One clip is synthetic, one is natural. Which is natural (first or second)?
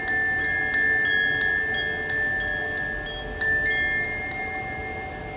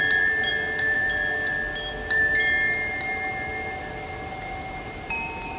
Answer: first